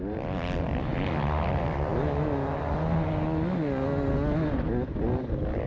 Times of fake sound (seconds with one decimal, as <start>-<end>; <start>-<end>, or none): none